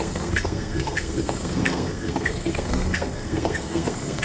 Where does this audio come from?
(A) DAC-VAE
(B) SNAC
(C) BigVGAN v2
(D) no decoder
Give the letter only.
B